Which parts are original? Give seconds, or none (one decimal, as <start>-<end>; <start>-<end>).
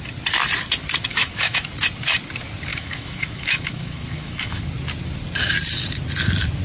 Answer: 0.0-1.1; 1.7-2.7; 4.6-6.6